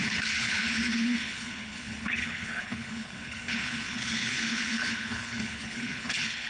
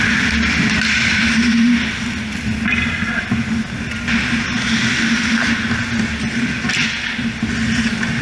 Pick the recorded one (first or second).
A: second